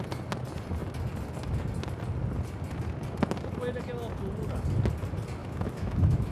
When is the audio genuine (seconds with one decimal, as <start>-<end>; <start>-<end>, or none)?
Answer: 0.0-5.4